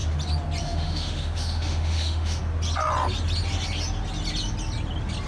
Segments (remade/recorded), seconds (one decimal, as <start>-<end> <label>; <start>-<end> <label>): 0.0-0.6 recorded; 0.6-2.4 remade; 2.4-5.3 recorded